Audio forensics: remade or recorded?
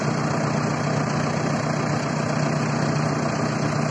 recorded